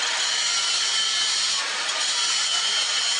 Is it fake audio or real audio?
real